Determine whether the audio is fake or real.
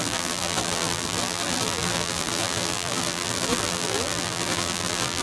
fake